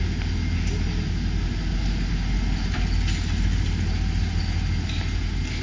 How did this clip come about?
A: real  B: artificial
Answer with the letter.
A